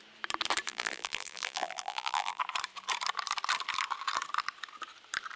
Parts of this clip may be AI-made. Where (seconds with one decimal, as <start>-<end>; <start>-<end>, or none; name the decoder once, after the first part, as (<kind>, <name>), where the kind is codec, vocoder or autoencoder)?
0.7-2.4 (vocoder, BigVGAN v2)